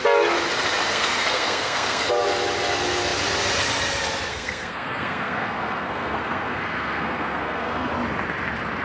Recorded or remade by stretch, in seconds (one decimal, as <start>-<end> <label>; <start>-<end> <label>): 0.0-0.9 recorded; 0.9-2.0 remade; 2.0-4.3 recorded; 4.3-7.9 remade; 7.9-8.8 recorded

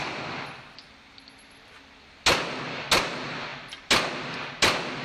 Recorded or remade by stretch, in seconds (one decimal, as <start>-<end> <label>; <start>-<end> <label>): 0.0-5.0 recorded

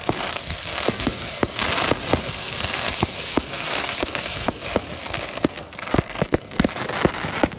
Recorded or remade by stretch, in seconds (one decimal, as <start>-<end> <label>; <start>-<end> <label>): 0.0-1.6 remade; 1.6-2.2 recorded; 2.2-6.8 remade; 6.8-7.6 recorded

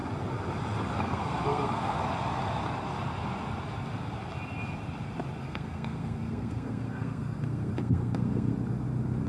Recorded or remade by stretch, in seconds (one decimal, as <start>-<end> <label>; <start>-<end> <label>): 0.0-1.0 recorded; 1.0-2.0 remade; 2.0-5.4 recorded; 5.4-8.5 remade; 8.5-9.3 recorded